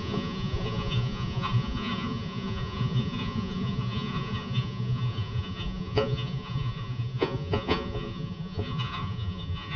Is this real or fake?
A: fake